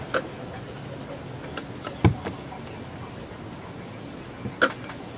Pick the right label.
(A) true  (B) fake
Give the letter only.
A